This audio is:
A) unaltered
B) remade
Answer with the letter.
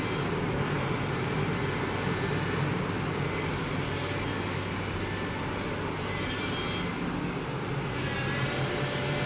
A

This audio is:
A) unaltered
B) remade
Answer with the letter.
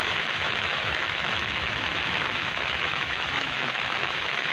B